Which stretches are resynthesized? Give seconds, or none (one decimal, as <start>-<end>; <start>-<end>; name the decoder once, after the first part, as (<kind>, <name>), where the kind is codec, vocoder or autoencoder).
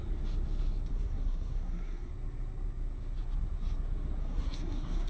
0.9-2.1 (codec, SNAC); 4.2-5.1